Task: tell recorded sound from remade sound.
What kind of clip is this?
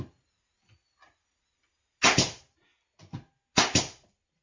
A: recorded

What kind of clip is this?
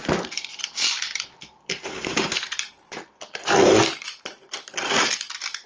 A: remade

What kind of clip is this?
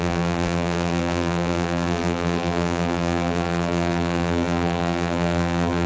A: remade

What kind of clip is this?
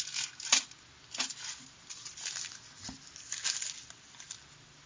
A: recorded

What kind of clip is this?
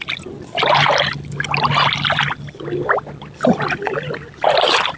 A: recorded